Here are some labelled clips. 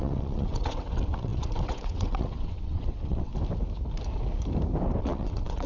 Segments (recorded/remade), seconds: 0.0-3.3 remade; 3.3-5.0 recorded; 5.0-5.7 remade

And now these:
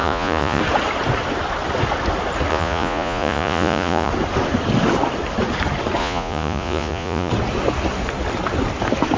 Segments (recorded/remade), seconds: 0.0-0.6 remade; 0.6-2.5 recorded; 2.5-4.1 remade; 4.1-6.0 recorded; 6.0-7.3 remade; 7.3-9.2 recorded